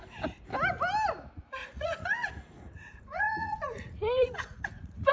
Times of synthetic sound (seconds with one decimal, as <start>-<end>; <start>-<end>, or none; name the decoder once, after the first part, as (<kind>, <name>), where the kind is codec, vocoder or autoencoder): 1.6-5.1 (vocoder, Vocos)